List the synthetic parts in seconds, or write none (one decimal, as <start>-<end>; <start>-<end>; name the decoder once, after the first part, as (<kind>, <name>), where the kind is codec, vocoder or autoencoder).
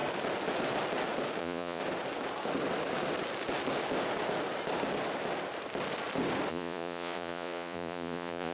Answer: 1.4-1.8 (vocoder, Vocos); 6.5-8.5